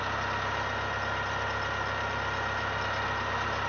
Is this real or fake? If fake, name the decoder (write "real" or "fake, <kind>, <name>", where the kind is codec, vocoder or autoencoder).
real